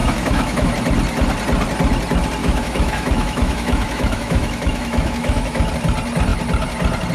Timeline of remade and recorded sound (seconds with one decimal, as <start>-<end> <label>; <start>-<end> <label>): 0.0-0.7 remade; 0.7-2.4 recorded; 2.4-5.7 remade; 5.7-7.1 recorded